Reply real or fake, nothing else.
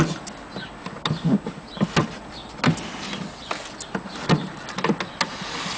real